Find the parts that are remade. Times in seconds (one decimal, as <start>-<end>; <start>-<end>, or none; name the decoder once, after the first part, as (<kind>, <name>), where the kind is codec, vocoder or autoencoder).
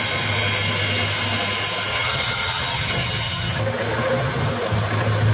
1.9-3.6 (vocoder, HiFi-GAN)